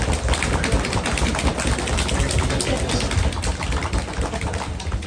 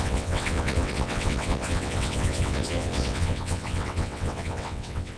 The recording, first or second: first